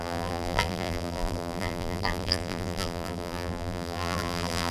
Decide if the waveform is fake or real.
fake